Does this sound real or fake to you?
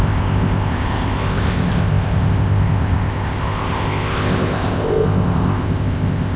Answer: fake